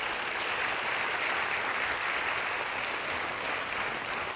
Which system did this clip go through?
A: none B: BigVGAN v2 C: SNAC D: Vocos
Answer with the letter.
A